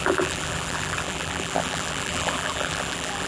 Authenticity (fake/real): fake